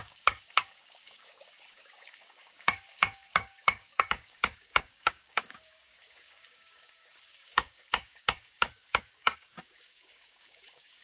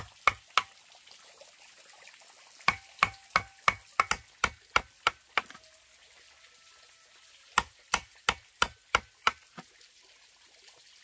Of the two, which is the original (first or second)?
second